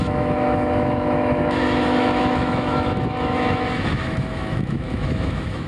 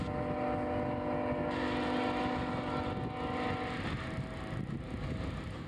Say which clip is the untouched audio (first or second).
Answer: second